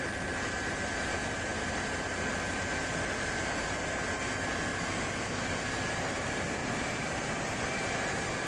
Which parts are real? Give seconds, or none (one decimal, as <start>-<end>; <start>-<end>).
0.0-8.5